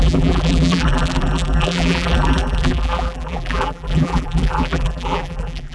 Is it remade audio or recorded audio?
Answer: remade